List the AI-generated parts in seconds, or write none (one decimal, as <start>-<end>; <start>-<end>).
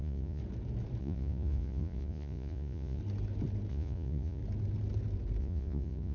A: 0.0-0.4; 1.0-3.0; 3.7-4.4; 5.4-6.1